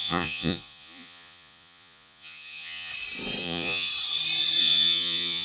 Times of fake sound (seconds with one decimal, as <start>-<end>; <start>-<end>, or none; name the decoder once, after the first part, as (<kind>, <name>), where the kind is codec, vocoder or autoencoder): 0.0-2.9 (vocoder, Vocos); 3.4-3.9; 4.6-5.4